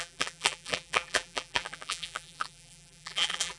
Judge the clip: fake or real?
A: fake